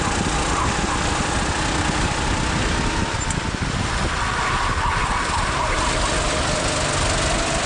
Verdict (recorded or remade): recorded